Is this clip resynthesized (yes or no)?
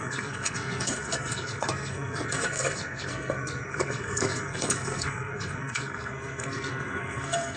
yes